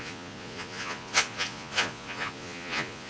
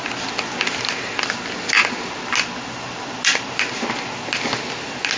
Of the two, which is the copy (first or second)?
first